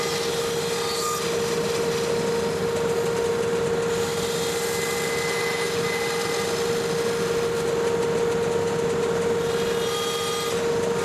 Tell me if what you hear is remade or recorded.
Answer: recorded